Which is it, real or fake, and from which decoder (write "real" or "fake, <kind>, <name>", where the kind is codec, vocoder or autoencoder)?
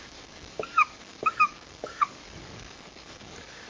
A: fake, codec, DAC